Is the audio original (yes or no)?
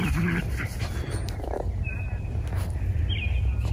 yes